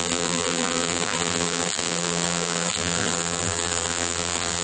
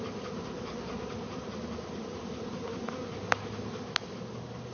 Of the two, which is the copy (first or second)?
first